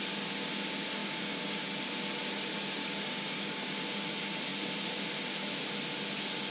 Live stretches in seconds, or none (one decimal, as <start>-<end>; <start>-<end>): 0.0-1.0; 1.6-2.8; 3.8-6.5